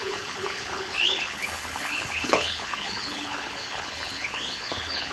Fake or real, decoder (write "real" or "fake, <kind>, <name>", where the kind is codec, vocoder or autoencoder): fake, codec, HILCodec